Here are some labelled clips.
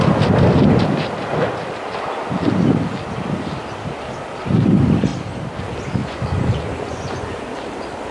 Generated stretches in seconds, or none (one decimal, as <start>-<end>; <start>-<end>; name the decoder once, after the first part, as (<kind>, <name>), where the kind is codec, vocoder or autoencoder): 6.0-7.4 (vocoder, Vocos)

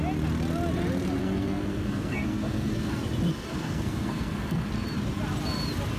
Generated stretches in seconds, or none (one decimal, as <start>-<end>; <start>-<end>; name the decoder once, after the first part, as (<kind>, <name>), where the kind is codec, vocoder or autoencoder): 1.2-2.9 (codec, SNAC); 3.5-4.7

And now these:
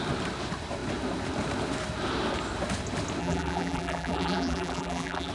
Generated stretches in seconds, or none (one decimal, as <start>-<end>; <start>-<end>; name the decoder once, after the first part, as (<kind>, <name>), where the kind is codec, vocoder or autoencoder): 3.2-5.3 (vocoder, BigVGAN v2)

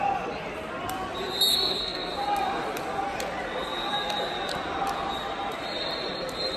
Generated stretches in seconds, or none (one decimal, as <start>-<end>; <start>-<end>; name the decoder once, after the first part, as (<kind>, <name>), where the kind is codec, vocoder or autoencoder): 1.5-2.1 (codec, SNAC)

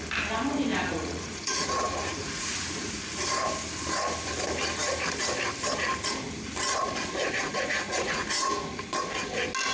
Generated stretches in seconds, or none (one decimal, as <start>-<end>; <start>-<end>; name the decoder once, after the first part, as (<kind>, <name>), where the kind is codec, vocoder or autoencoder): 0.7-3.0 (vocoder, Vocos); 7.4-8.8

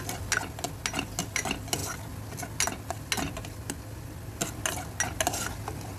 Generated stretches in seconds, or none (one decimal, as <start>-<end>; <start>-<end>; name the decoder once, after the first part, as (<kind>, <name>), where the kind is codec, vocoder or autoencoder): none

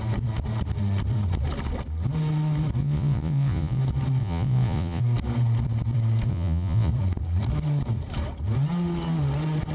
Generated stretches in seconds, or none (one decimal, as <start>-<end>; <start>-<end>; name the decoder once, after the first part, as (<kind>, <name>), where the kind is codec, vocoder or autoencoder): 2.8-3.8 (vocoder, Vocos); 4.2-5.0; 6.3-6.9

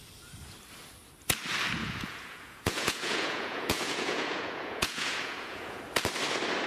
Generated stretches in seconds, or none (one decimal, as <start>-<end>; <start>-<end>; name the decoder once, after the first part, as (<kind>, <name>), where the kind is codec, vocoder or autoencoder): 1.8-5.8 (vocoder, Vocos)